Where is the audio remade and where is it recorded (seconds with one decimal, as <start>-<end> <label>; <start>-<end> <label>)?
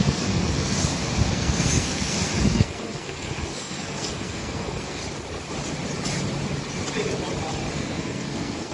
0.0-0.8 remade; 0.8-1.3 recorded; 1.3-5.0 remade; 5.0-7.7 recorded; 7.7-8.7 remade